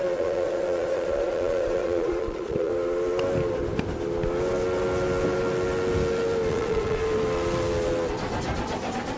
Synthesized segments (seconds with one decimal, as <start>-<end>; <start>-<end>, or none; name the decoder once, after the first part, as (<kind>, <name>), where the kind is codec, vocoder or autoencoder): 0.0-2.7 (vocoder, Vocos); 6.5-7.0